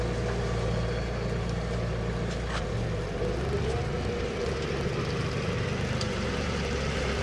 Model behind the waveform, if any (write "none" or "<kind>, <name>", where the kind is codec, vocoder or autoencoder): none